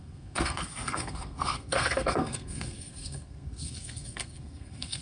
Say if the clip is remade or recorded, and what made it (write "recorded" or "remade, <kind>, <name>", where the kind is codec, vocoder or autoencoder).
remade, codec, SNAC